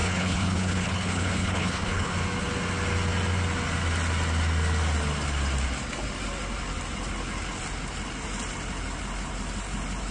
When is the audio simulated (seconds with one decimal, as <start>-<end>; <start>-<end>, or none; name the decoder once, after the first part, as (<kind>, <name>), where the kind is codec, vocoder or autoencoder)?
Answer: 0.0-2.1 (codec, HILCodec)